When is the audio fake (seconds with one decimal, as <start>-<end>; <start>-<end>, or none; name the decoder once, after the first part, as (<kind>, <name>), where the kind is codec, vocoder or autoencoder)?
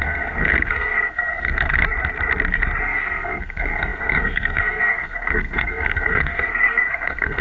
0.0-1.8 (codec, SNAC); 2.8-7.4